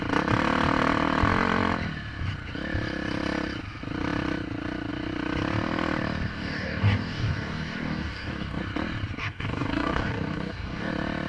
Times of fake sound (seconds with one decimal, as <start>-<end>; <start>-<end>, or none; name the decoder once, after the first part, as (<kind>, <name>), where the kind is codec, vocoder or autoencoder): 6.3-8.6 (codec, DAC); 9.2-10.9